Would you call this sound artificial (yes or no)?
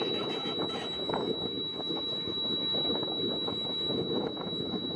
yes